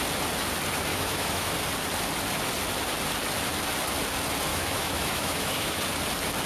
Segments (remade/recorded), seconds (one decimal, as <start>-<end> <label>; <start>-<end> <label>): 0.0-0.9 recorded; 0.9-1.5 remade; 1.5-4.5 recorded; 4.5-5.8 remade; 5.8-6.5 recorded